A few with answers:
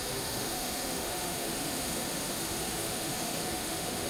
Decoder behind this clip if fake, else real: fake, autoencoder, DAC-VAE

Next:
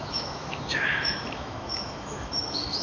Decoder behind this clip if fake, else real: fake, autoencoder, DAC-VAE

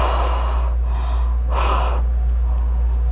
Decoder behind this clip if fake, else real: real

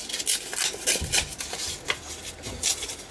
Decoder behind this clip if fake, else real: real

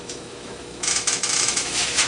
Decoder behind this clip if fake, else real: fake, autoencoder, DAC-VAE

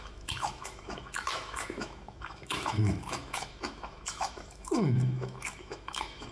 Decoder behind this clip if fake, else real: fake, autoencoder, DAC-VAE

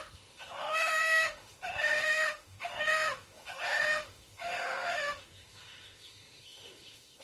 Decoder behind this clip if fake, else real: fake, autoencoder, DAC-VAE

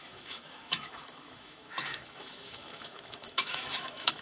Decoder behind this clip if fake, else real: fake, autoencoder, DAC-VAE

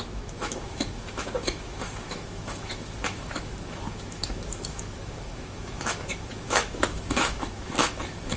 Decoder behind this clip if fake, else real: fake, autoencoder, DAC-VAE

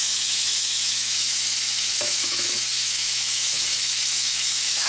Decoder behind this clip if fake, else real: fake, autoencoder, DAC-VAE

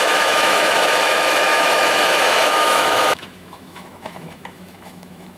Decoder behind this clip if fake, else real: fake, autoencoder, DAC-VAE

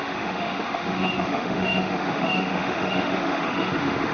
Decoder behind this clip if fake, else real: fake, autoencoder, DAC-VAE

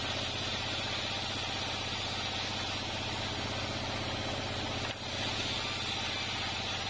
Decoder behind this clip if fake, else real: real